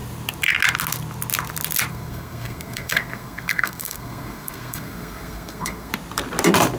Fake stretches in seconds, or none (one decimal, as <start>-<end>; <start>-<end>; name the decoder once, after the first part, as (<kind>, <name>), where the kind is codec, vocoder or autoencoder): 1.9-5.9 (codec, SNAC)